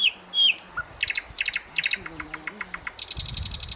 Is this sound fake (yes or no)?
no